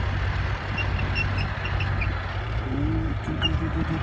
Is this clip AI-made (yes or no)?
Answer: no